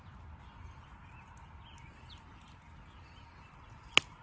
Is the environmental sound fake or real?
real